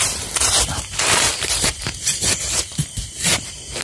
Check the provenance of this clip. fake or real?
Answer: fake